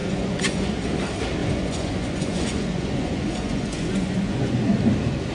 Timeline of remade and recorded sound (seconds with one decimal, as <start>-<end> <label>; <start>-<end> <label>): 0.0-0.7 remade; 0.7-1.4 recorded; 1.4-4.6 remade; 4.6-5.3 recorded